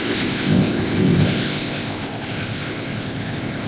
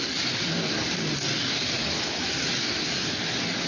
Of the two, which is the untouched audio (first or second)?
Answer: second